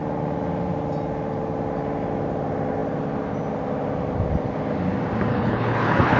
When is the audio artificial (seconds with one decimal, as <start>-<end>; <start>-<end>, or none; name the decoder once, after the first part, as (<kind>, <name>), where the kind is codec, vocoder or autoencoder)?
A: 5.3-6.2 (codec, HILCodec)